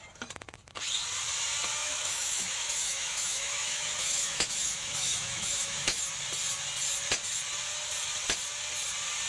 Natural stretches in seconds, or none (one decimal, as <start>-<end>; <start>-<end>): 0.0-1.8; 6.0-9.3